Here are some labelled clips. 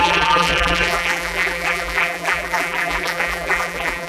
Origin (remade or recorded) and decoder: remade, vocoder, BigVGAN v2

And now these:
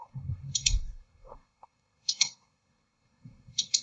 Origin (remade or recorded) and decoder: remade, codec, SNAC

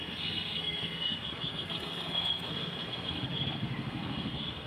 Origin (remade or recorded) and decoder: remade, codec, SNAC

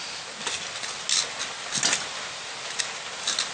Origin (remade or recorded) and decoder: recorded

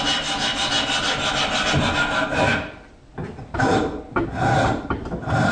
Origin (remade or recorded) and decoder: recorded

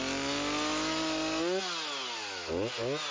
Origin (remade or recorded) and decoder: recorded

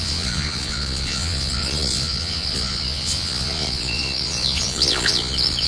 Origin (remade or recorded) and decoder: remade, vocoder, Vocos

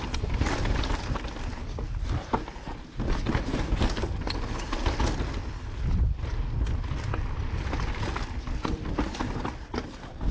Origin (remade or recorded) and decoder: recorded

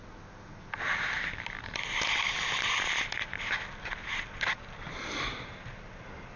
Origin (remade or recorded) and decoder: recorded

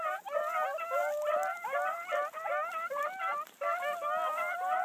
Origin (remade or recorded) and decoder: recorded